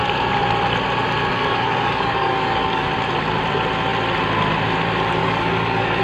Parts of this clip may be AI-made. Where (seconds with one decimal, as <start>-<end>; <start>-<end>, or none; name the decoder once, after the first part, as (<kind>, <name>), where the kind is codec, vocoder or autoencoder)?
1.3-2.9 (codec, DAC); 5.2-6.0